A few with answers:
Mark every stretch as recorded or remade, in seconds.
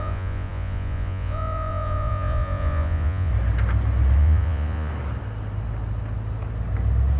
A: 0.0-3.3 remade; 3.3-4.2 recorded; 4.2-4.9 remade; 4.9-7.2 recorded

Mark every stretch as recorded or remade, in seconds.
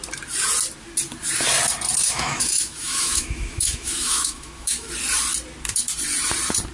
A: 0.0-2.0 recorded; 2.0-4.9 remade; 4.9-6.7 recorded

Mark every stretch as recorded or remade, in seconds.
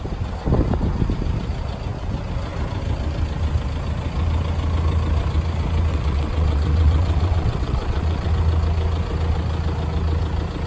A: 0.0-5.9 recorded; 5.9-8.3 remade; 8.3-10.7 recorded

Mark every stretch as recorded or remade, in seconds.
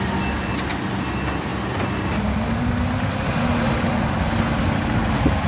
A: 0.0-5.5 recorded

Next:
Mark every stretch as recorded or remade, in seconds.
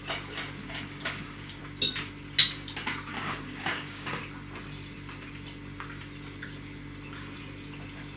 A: 0.0-0.6 recorded; 0.6-1.6 remade; 1.6-3.1 recorded; 3.1-4.2 remade; 4.2-8.2 recorded